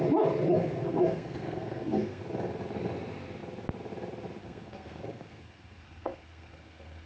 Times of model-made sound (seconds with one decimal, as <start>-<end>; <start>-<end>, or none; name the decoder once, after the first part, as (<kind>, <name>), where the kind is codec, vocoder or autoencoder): 0.6-2.2 (codec, SNAC); 4.4-7.1